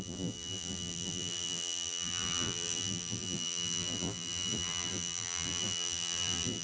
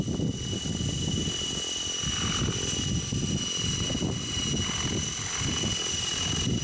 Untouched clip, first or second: second